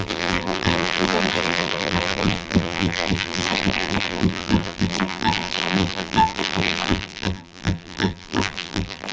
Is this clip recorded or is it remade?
remade